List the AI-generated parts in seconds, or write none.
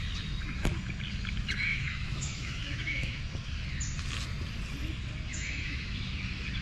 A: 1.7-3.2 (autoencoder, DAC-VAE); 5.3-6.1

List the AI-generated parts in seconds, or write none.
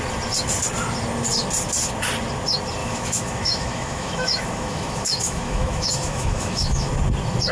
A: 2.8-6.9 (autoencoder, DAC-VAE)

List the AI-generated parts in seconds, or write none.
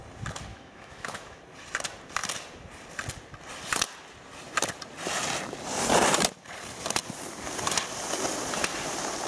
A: 0.5-1.4 (autoencoder, DAC-VAE)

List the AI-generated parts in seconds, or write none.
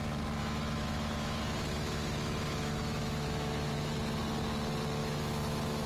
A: 0.4-3.9 (autoencoder, DAC-VAE); 5.0-5.9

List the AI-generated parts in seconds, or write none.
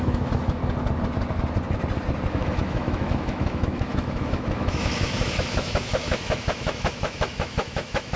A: 0.0-0.6 (autoencoder, DAC-VAE); 2.3-8.2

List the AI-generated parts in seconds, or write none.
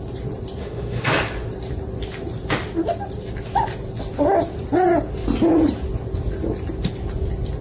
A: 0.6-1.1 (autoencoder, DAC-VAE)